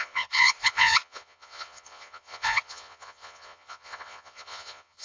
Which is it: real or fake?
fake